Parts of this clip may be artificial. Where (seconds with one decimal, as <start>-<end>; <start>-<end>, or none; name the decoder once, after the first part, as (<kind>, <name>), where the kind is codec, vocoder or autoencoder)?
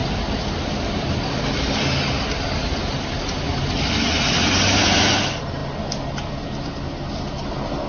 none